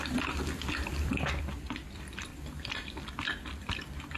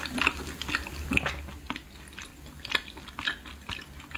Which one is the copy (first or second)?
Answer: first